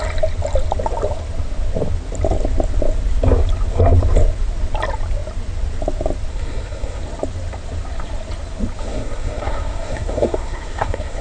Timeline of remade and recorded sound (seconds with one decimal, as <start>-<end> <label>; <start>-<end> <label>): 0.0-6.3 recorded; 6.3-7.0 remade; 7.0-8.8 recorded; 8.8-11.2 remade